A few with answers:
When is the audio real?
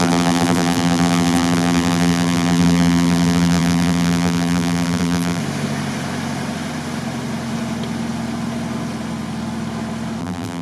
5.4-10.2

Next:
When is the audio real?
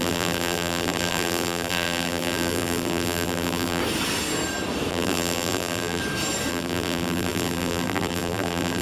3.8-4.9; 6.0-6.5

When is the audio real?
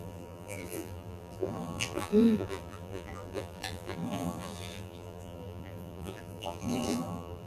none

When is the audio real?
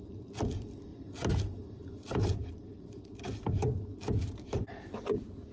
0.9-1.6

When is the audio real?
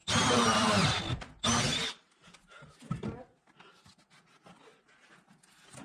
1.0-1.7; 2.8-5.8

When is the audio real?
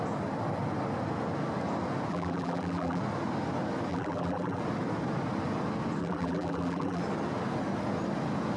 0.0-2.1; 3.0-3.9; 4.6-6.0; 7.0-8.6